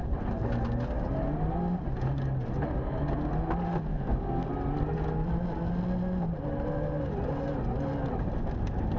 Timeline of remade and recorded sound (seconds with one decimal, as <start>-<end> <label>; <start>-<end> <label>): 0.0-3.9 recorded; 3.9-4.5 remade; 4.5-9.0 recorded